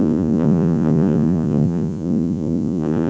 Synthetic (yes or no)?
yes